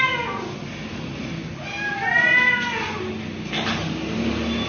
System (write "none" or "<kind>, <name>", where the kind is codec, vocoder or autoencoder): none